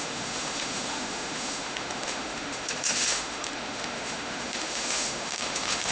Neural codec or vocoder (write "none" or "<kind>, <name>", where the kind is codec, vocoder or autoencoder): autoencoder, DAC-VAE